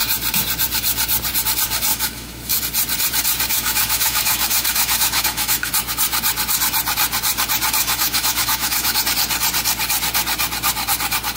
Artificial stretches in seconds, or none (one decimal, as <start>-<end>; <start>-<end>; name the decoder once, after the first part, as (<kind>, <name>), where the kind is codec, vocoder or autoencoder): 1.9-2.6 (autoencoder, DAC-VAE); 3.5-5.7; 7.8-9.0